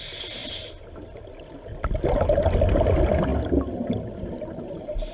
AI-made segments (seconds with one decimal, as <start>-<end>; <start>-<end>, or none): none